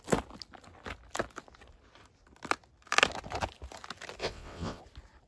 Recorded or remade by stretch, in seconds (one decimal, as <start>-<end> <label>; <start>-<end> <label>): 0.0-4.2 recorded; 4.2-4.8 remade; 4.8-5.3 recorded